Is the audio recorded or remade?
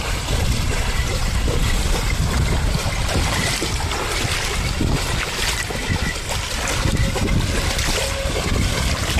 recorded